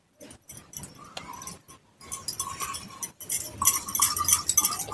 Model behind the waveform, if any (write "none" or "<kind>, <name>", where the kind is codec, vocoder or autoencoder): none